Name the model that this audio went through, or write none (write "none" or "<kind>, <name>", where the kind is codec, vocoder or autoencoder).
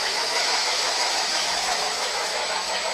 autoencoder, DAC-VAE